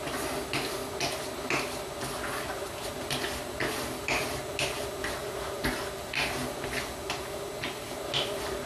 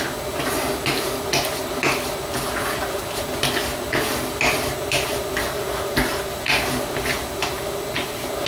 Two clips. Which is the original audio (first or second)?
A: first